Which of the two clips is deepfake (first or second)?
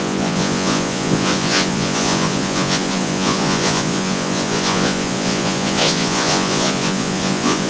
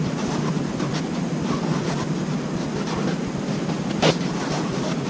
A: first